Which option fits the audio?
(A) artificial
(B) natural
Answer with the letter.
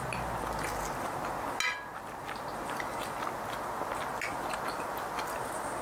B